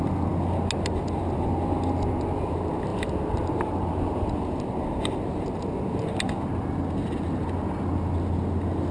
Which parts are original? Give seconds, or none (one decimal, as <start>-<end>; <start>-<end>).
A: 0.0-8.9